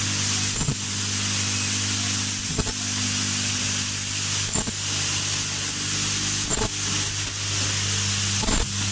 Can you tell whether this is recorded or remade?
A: recorded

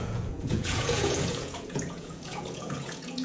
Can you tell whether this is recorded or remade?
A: remade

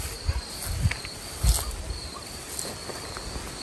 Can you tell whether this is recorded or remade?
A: recorded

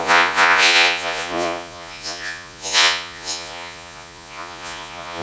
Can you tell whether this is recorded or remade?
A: remade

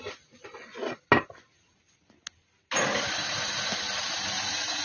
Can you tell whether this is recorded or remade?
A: recorded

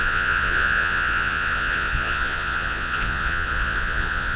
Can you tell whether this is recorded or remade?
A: remade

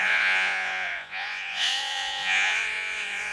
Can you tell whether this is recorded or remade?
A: remade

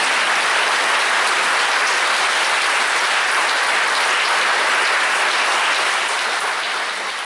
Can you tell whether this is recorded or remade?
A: recorded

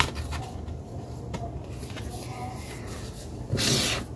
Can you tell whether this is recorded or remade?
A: recorded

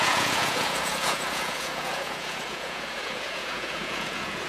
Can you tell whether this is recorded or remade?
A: remade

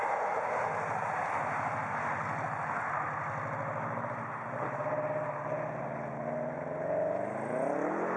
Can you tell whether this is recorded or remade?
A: recorded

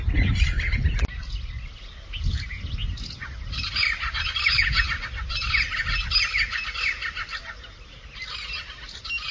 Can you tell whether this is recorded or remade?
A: recorded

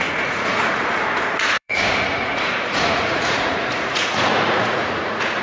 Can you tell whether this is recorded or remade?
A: remade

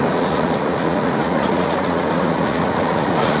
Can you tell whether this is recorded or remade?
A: remade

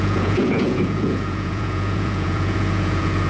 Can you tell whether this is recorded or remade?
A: remade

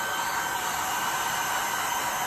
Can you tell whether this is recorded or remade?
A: recorded